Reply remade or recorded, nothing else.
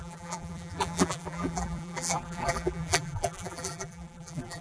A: remade